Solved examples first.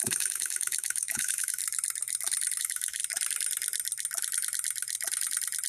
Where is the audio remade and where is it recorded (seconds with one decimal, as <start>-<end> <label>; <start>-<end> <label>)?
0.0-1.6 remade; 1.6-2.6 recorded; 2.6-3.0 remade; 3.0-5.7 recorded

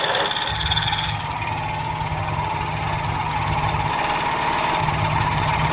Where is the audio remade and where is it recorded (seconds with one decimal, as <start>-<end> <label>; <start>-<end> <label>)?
0.0-0.5 recorded; 0.5-3.9 remade; 3.9-4.8 recorded; 4.8-5.7 remade

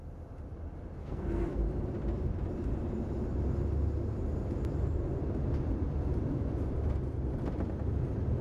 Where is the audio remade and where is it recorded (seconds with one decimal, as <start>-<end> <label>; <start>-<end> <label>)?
0.0-1.0 recorded; 1.0-1.6 remade; 1.6-8.4 recorded